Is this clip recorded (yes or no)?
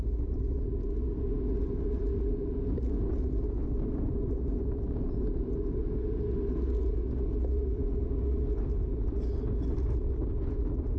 yes